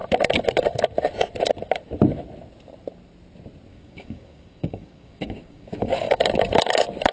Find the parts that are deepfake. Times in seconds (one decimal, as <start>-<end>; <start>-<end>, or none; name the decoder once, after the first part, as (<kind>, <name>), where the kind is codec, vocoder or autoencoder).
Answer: 3.7-6.2 (codec, DAC)

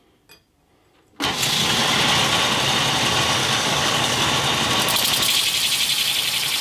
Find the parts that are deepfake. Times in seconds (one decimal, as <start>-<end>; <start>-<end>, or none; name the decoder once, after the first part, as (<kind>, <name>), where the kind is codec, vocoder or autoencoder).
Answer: 3.4-4.3 (codec, DAC)

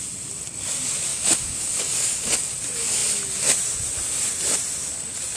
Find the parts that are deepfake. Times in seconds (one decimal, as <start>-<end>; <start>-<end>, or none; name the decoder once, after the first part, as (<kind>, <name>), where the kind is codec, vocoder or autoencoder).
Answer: 1.1-2.5 (codec, DAC)

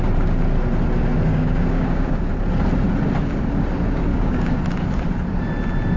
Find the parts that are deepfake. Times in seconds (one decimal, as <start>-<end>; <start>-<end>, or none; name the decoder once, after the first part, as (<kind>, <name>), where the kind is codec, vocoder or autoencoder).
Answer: 1.3-2.3 (codec, DAC); 4.1-4.6

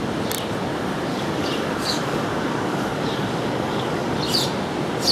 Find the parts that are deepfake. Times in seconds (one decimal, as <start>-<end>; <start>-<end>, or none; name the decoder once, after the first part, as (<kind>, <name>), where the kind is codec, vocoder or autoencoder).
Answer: 1.1-4.2 (codec, DAC)